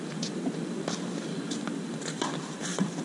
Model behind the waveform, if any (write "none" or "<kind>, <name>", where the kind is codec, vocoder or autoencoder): vocoder, BigVGAN v2